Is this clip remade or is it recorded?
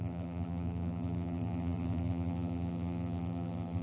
remade